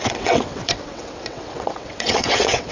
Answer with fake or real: fake